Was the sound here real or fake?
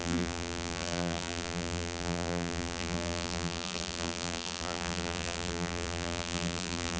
fake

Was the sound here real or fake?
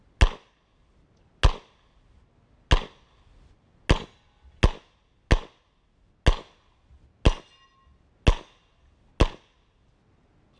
real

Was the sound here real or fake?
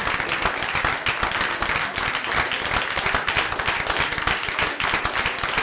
real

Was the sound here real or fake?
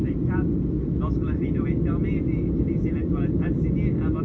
real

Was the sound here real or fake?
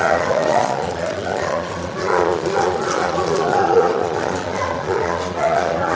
fake